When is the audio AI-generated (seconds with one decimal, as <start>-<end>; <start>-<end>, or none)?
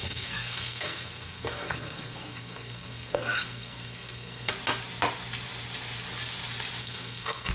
0.0-4.5; 6.8-7.5